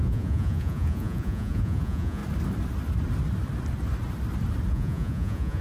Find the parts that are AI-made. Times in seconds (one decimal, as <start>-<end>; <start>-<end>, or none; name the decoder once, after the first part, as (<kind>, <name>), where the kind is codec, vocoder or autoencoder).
0.0-2.2 (vocoder, Vocos); 4.7-5.6